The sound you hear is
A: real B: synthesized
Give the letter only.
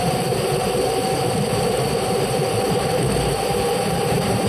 B